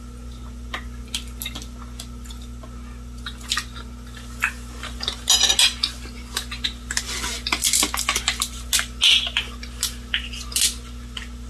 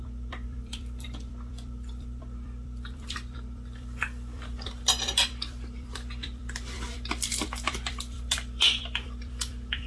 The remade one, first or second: second